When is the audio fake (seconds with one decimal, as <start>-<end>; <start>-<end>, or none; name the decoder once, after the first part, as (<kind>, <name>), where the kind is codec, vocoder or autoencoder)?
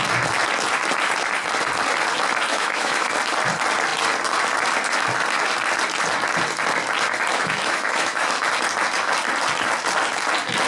2.5-3.1 (autoencoder, DAC-VAE); 7.3-8.3